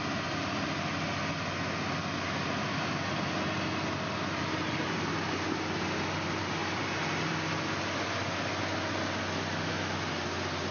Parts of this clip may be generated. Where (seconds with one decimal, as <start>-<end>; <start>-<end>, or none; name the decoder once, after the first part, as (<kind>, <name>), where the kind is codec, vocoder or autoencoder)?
none